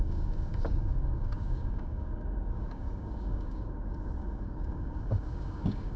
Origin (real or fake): fake